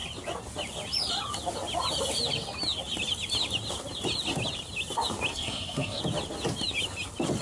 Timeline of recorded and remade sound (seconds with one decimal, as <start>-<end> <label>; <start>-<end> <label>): 0.0-5.3 recorded; 5.3-6.0 remade; 6.0-7.4 recorded